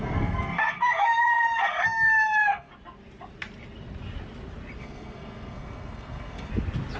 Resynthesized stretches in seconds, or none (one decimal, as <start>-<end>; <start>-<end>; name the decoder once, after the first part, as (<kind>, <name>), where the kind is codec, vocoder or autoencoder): 0.0-2.7 (codec, SNAC); 4.8-6.5